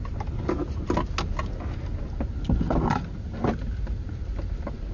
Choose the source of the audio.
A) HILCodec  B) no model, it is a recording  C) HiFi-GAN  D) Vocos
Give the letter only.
B